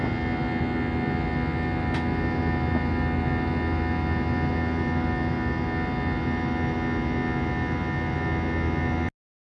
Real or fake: real